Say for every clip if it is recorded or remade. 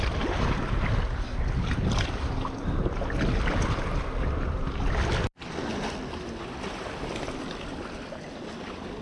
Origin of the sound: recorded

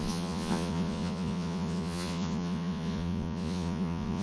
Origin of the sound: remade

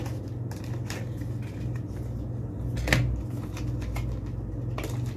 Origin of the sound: recorded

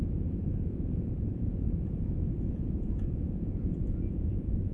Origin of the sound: remade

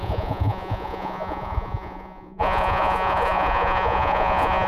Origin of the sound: remade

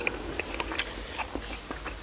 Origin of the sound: recorded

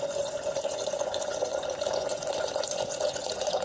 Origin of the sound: remade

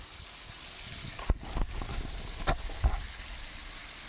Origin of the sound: recorded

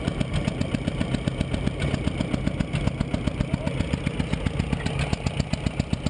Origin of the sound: recorded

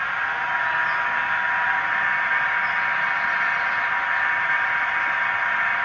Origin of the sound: recorded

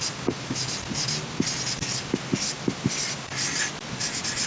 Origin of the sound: recorded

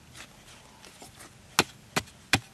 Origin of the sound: recorded